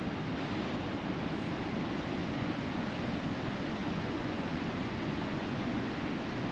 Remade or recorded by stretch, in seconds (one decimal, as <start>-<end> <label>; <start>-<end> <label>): 0.0-2.2 recorded; 2.2-2.9 remade; 2.9-3.8 recorded; 3.8-5.9 remade; 5.9-6.5 recorded